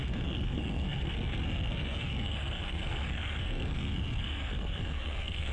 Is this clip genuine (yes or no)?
no